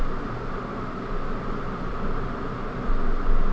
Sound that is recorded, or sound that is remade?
recorded